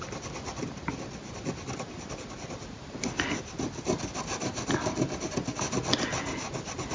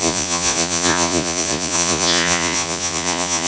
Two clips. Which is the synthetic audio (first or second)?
second